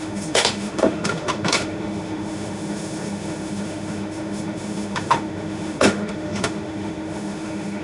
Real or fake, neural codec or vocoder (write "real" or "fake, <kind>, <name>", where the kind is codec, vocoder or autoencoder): fake, autoencoder, DAC-VAE